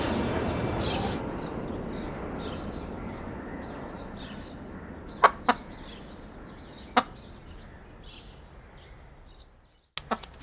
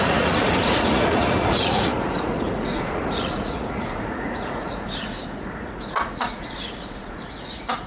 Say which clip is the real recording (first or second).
first